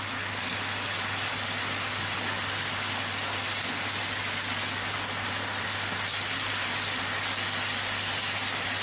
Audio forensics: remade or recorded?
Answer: recorded